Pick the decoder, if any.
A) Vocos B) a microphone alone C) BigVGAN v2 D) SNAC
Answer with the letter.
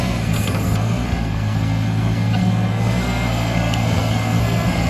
D